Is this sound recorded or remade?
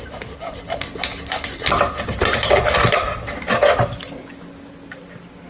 recorded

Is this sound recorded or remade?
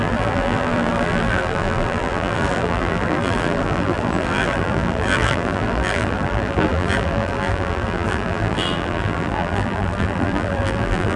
remade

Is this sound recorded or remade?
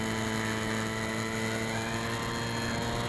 recorded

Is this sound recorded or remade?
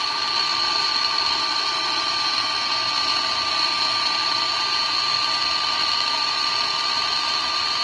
recorded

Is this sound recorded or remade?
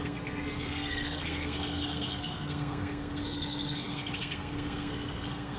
remade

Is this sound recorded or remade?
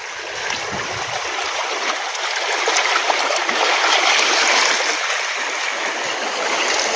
recorded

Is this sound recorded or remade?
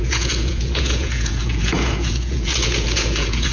remade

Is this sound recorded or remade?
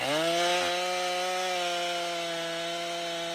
recorded